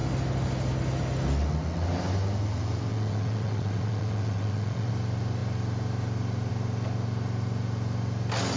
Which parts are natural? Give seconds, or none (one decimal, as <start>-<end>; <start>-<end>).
0.0-2.9; 4.9-8.6